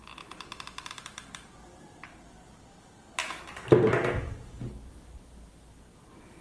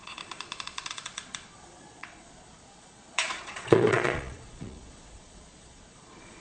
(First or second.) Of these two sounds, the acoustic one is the first